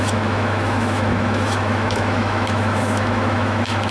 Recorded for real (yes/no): no